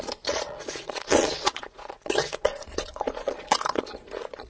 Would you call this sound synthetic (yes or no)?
yes